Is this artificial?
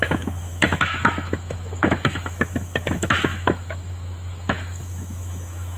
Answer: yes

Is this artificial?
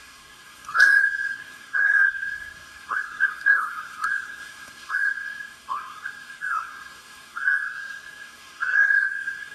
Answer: yes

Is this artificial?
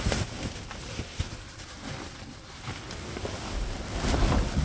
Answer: no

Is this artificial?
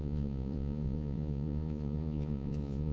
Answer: yes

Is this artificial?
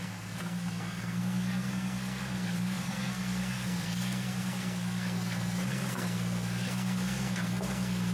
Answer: yes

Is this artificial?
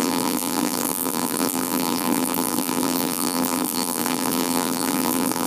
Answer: yes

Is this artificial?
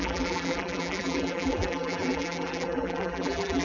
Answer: yes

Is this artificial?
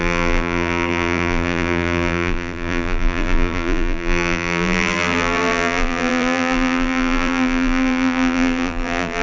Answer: yes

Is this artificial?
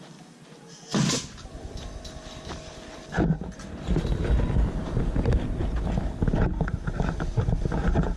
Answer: no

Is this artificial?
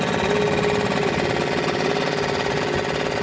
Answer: no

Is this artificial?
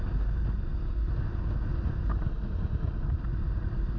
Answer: no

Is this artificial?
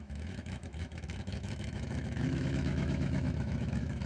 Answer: yes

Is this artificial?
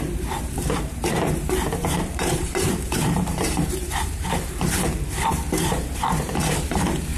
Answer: yes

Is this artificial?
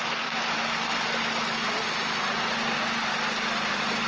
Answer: no